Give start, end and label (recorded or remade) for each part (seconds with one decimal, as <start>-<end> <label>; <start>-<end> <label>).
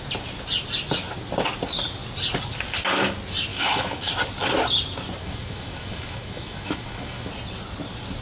0.0-3.5 recorded; 3.5-4.1 remade; 4.1-5.2 recorded; 5.2-7.3 remade; 7.3-8.2 recorded